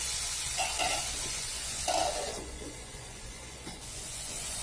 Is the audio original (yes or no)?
no